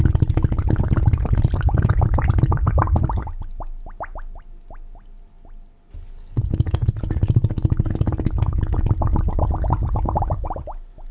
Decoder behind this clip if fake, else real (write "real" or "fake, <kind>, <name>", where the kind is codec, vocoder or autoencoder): real